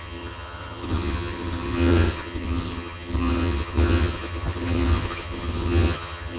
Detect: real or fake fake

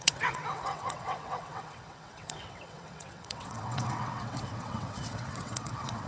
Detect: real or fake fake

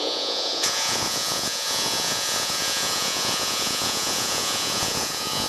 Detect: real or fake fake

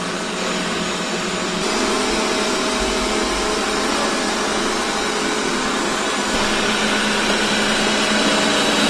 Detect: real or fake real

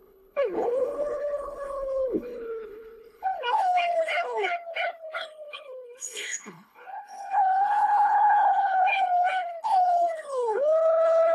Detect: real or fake fake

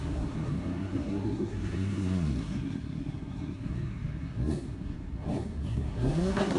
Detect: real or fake fake